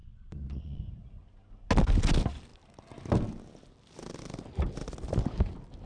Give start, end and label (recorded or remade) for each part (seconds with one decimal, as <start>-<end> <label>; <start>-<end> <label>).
0.0-0.8 remade; 0.8-5.9 recorded